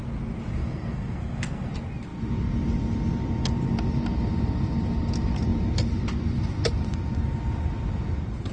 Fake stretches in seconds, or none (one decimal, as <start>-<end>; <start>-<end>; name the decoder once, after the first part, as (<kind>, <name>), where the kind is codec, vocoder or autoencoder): 0.6-1.7 (codec, SNAC)